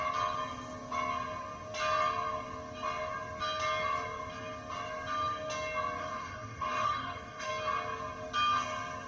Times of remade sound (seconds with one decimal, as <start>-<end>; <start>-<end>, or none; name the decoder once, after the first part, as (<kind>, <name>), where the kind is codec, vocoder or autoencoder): 6.0-7.5 (codec, DAC)